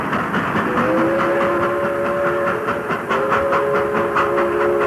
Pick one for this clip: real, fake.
real